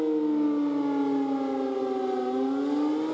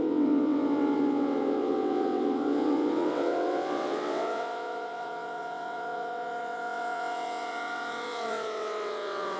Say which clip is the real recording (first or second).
first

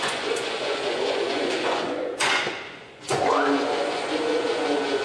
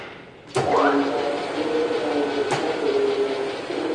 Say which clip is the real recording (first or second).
second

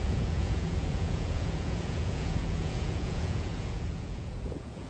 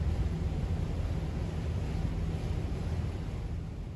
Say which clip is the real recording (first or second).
second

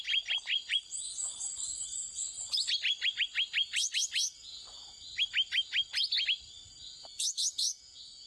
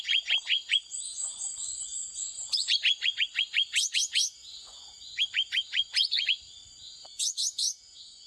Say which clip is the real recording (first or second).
first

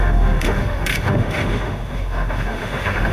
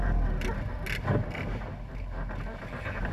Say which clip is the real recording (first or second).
second